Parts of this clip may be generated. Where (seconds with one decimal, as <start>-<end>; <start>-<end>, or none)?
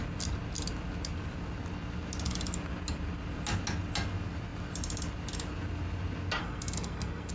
6.4-7.3